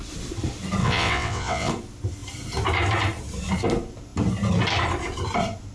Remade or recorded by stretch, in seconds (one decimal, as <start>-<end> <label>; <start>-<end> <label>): 0.0-0.8 recorded; 0.8-1.7 remade; 1.7-5.7 recorded